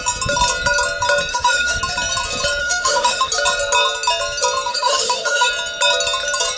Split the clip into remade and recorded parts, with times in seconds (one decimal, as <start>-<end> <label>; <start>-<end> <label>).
0.0-1.3 recorded; 1.3-1.8 remade; 1.8-2.6 recorded; 2.6-3.3 remade; 3.3-4.7 recorded; 4.7-5.5 remade; 5.5-6.6 recorded